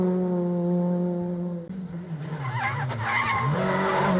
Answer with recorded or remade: recorded